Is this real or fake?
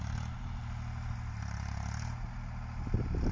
real